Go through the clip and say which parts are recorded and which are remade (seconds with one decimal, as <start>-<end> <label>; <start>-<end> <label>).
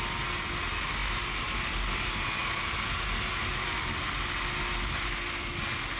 0.0-6.0 recorded